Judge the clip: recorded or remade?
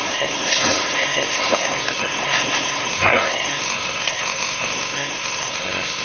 remade